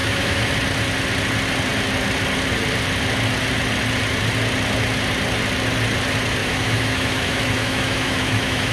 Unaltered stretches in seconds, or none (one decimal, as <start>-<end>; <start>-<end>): 0.5-6.4